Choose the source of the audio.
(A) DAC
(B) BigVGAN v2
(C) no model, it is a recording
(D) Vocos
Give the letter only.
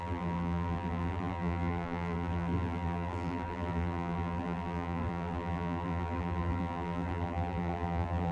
B